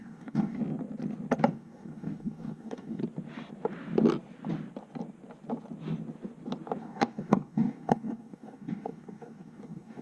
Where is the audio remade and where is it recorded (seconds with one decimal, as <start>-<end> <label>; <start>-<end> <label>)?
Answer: 0.0-0.6 remade; 0.6-1.5 recorded; 1.5-3.0 remade; 3.0-6.8 recorded; 6.8-10.0 remade